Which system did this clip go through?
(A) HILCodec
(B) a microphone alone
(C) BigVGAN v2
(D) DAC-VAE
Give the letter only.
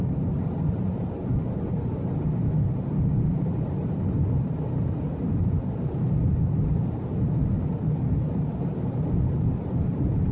B